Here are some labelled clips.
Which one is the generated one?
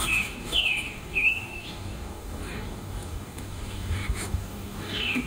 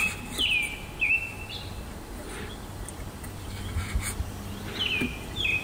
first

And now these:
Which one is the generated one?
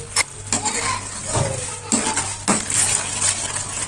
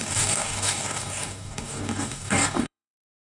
second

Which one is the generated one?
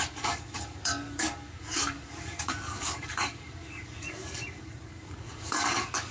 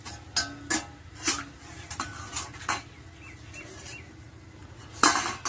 first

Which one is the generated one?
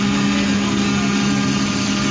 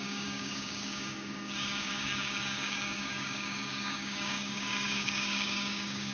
second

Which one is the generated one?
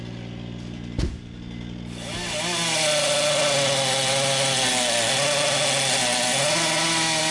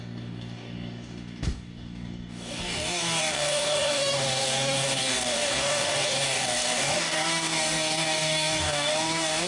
second